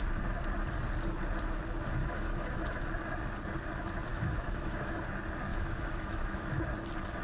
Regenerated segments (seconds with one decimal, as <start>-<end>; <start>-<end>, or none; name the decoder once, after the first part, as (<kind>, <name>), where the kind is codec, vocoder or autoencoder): 2.0-2.8 (autoencoder, DAC-VAE); 4.1-5.0; 5.5-6.6